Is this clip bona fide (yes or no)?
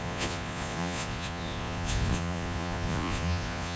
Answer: no